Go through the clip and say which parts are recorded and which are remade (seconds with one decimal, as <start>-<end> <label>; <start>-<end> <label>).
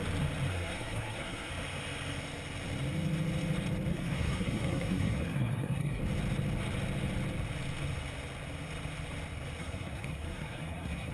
0.0-0.5 recorded; 0.5-1.5 remade; 1.5-3.9 recorded; 3.9-6.0 remade; 6.0-9.6 recorded; 9.6-11.1 remade